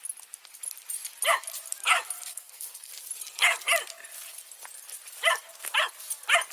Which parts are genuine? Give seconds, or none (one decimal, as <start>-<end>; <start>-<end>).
0.0-2.3; 2.9-6.5